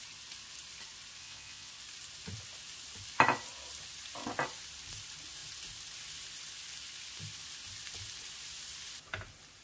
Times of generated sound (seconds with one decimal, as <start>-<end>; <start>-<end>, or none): 1.2-1.7